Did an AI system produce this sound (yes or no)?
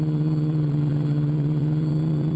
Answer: yes